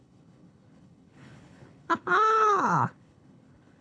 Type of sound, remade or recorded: remade